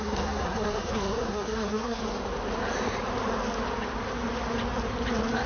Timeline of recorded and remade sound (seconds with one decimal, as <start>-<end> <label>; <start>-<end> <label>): 0.0-2.0 remade; 2.0-5.5 recorded